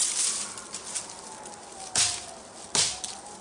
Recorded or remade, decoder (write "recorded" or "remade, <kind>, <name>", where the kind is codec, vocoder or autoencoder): recorded